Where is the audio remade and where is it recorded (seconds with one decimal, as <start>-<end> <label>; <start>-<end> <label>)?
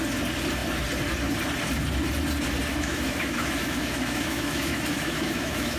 0.0-2.7 recorded; 2.7-5.8 remade